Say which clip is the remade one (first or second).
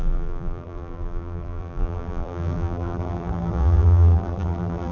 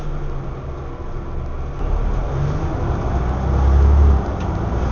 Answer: first